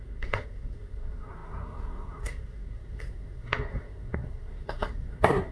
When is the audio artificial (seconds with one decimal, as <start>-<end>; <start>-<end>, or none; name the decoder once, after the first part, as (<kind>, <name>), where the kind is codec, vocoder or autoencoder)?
0.0-5.5 (codec, SNAC)

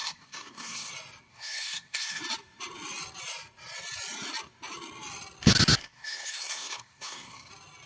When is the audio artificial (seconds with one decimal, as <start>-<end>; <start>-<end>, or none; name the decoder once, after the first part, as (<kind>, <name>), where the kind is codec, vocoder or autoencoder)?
0.0-0.9 (codec, SNAC); 1.3-2.2; 5.8-7.5

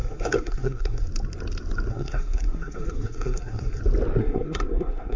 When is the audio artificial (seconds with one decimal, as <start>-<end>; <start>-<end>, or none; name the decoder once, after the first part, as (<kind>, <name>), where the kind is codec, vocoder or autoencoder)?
0.0-1.1 (codec, SNAC); 1.9-3.8; 4.2-5.2